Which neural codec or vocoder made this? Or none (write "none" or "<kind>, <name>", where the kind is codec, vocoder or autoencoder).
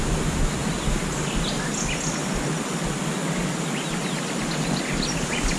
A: none